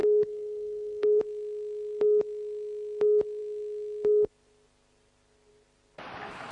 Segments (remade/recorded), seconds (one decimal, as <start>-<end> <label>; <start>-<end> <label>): 0.0-1.2 remade; 1.2-6.5 recorded